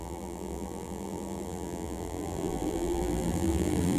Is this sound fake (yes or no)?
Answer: yes